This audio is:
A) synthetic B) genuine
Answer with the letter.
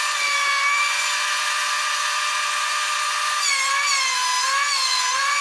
A